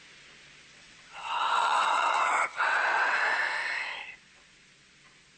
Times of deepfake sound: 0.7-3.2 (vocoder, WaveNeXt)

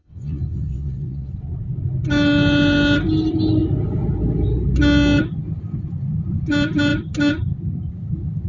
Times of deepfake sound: 0.0-1.3 (vocoder, WaveNeXt)

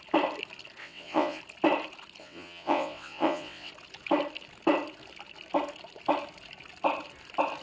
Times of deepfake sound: 0.8-1.4 (vocoder, WaveNeXt); 2.2-3.7

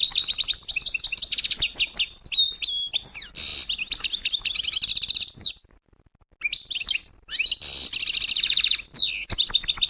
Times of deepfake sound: none

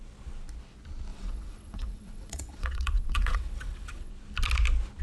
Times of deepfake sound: 1.1-4.1 (vocoder, WaveNeXt)